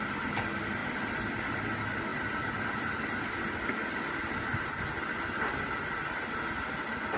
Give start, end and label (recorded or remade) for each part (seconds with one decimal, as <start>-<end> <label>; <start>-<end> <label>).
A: 0.0-7.2 recorded